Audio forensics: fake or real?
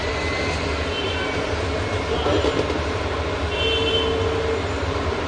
real